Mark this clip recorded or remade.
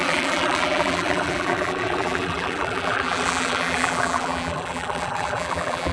remade